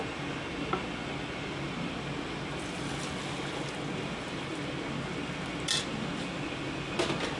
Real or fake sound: real